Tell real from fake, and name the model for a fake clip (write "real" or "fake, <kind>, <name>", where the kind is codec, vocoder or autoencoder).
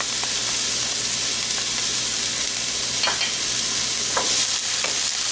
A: real